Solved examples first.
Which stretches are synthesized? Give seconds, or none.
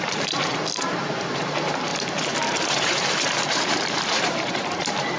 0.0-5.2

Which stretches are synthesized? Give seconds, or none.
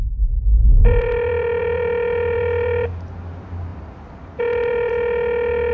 0.8-3.1; 3.7-4.9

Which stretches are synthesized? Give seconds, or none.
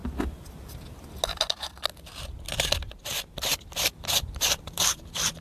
3.2-5.4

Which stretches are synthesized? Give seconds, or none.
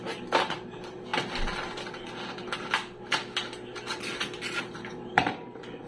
0.0-1.1; 4.6-5.9